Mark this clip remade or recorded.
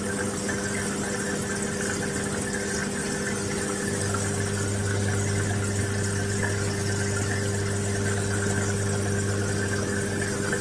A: recorded